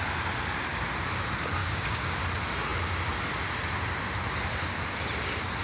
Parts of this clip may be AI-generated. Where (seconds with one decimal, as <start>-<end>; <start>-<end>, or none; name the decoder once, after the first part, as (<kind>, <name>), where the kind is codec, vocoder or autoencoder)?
1.6-2.2 (codec, DAC)